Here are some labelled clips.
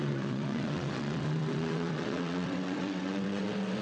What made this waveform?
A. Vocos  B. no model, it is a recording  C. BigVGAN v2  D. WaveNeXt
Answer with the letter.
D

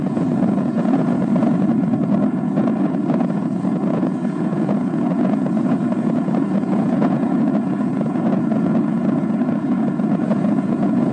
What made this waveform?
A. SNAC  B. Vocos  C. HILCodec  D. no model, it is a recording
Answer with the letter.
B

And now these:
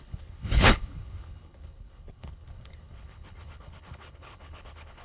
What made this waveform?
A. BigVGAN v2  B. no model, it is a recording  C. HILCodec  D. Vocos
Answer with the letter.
C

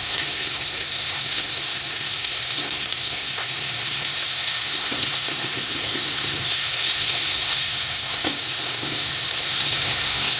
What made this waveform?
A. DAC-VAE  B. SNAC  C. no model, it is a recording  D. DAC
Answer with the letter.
B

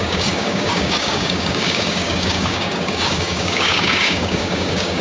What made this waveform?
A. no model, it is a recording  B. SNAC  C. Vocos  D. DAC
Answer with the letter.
D